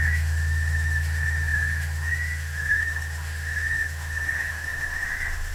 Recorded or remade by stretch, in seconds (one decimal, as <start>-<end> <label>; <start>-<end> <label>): 0.0-5.5 remade